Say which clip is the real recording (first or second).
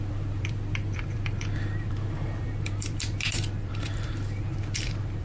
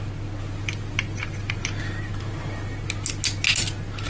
second